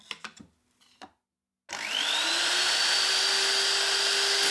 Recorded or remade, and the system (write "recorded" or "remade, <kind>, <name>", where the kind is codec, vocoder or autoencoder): recorded